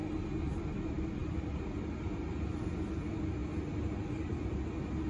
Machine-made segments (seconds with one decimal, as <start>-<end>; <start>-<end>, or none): none